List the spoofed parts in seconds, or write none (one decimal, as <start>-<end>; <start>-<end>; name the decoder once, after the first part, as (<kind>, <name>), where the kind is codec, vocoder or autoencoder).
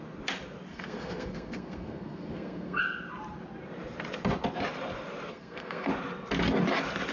0.7-2.8 (codec, SNAC); 5.3-5.9